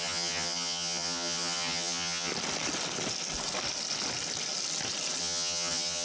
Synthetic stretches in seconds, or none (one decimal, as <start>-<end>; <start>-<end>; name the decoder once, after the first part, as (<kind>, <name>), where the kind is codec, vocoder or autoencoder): 0.0-2.3 (vocoder, HiFi-GAN); 5.2-6.0